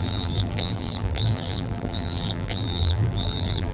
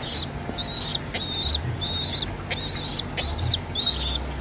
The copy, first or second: first